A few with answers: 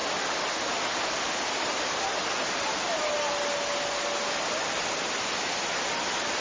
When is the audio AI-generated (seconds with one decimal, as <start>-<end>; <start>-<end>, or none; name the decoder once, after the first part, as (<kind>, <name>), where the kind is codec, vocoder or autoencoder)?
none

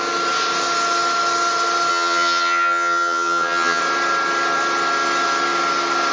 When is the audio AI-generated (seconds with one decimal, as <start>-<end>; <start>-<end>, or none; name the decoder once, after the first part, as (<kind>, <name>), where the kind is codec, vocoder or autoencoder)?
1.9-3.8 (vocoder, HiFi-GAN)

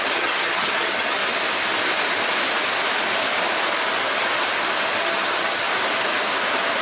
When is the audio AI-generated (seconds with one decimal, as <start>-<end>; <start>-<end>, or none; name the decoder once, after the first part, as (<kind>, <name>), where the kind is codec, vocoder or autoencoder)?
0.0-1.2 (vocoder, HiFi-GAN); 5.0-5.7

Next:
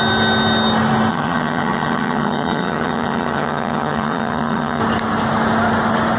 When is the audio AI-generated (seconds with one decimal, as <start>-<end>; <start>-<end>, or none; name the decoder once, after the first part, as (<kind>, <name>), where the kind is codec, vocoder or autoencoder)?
1.1-4.8 (vocoder, HiFi-GAN)